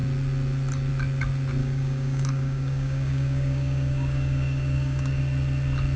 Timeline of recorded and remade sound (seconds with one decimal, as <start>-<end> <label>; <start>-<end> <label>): 0.0-1.6 recorded; 1.6-5.2 remade; 5.2-6.0 recorded